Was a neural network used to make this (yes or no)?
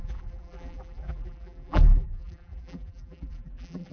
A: yes